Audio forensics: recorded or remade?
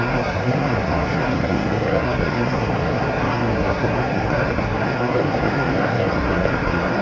remade